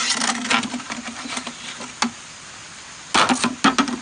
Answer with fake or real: real